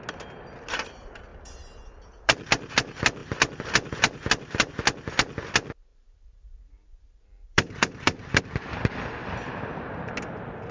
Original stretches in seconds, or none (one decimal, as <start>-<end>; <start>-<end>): 0.0-1.3; 2.5-3.2; 4.7-5.9; 8.4-9.2; 9.8-10.7